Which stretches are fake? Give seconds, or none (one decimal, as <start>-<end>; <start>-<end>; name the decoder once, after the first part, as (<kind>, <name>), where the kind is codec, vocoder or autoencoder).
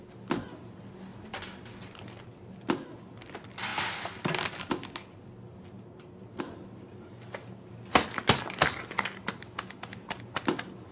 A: none